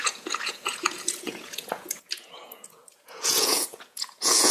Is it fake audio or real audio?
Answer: fake